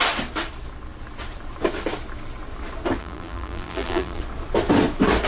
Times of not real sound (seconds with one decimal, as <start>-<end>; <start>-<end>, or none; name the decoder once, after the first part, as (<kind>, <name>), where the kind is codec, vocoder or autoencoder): 3.0-4.2 (vocoder, BigVGAN v2)

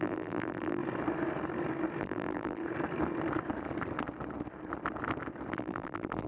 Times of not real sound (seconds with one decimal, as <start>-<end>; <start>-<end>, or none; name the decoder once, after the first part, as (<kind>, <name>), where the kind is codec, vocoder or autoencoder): 0.0-0.8 (vocoder, BigVGAN v2); 2.0-2.6; 5.5-6.3

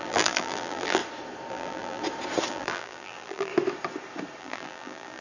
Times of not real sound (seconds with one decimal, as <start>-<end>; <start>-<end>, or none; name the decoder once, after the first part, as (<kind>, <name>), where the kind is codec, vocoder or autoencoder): 0.0-1.0 (vocoder, BigVGAN v2); 1.5-2.0; 2.5-3.5; 4.4-5.2